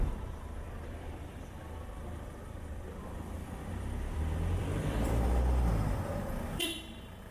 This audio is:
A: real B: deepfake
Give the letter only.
B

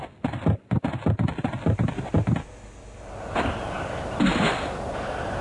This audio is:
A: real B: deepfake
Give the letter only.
A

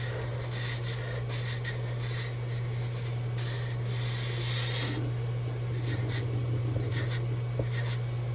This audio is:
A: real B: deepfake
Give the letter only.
A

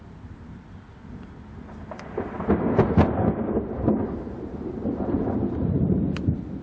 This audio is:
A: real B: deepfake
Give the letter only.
A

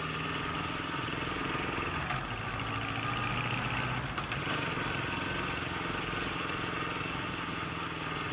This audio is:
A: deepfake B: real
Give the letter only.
B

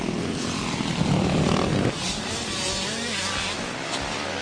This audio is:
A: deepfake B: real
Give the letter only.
B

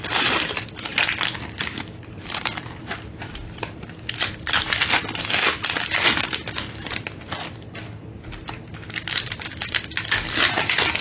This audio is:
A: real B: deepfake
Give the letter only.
A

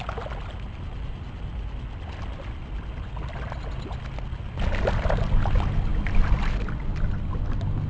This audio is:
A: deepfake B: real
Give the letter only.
B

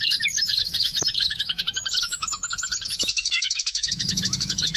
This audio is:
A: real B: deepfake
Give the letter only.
B